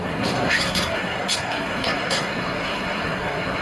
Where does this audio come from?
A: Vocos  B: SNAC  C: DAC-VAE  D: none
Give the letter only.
B